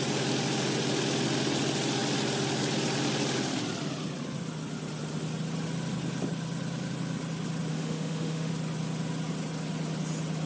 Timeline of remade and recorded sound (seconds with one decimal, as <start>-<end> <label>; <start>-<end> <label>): 0.0-7.7 recorded; 7.7-8.5 remade; 8.5-10.5 recorded